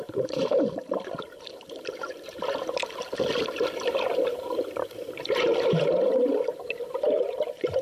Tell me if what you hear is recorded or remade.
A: remade